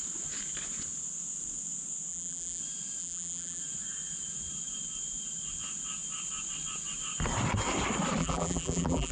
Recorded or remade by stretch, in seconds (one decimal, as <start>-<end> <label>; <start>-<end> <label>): 0.0-2.1 recorded; 2.1-2.6 remade; 2.6-3.0 recorded; 3.0-3.6 remade; 3.6-8.2 recorded; 8.2-9.1 remade